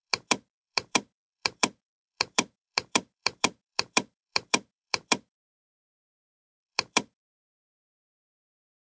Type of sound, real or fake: fake